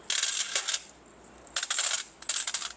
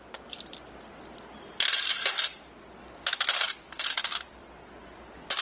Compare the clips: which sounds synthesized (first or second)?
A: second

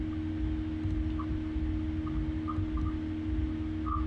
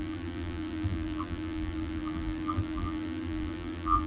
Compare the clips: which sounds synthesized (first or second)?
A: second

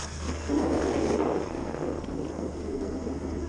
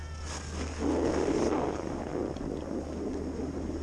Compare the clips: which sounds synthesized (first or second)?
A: first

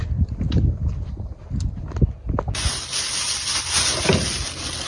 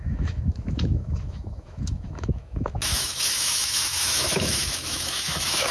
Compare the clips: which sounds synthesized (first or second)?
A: second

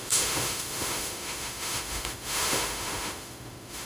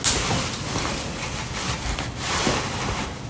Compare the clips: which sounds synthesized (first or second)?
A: first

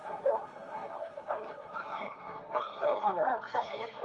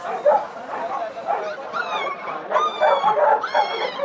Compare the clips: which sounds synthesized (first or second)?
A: first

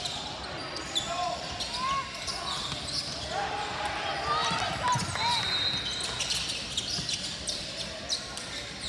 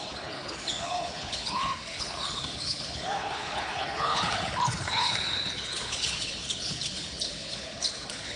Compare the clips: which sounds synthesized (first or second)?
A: second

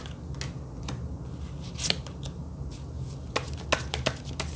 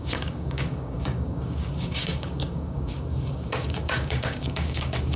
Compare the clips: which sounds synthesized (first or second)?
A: second